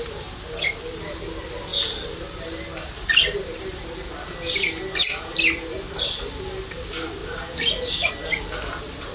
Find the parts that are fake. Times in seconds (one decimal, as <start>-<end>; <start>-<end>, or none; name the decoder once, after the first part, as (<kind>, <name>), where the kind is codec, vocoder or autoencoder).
none